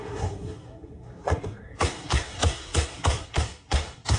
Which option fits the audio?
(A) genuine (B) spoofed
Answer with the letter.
B